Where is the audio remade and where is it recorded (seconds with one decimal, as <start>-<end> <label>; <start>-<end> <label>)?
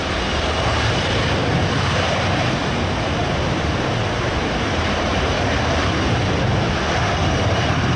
0.0-1.4 recorded; 1.4-2.3 remade; 2.3-3.2 recorded; 3.2-6.2 remade; 6.2-7.2 recorded; 7.2-8.0 remade